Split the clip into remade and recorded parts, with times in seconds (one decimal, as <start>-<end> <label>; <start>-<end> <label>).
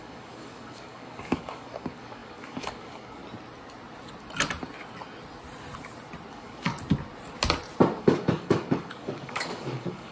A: 0.0-3.2 remade; 3.2-6.3 recorded; 6.3-6.7 remade; 6.7-8.0 recorded; 8.0-10.1 remade